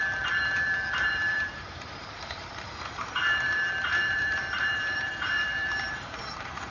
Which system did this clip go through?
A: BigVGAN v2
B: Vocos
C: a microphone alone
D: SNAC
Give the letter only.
A